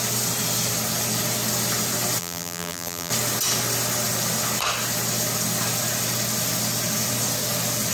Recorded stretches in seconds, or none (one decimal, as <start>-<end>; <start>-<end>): 0.0-2.2; 3.1-7.9